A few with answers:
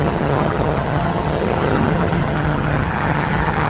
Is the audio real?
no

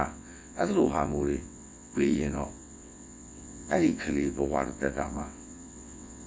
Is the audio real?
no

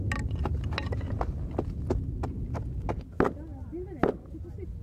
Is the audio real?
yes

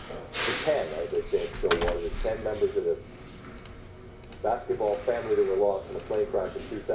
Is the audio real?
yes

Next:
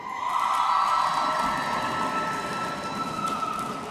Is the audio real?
yes